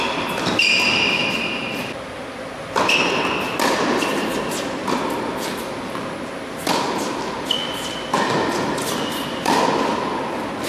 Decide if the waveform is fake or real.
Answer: real